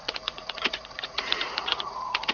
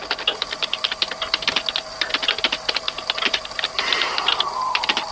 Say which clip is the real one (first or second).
second